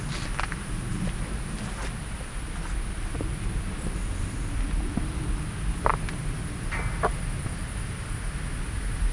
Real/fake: real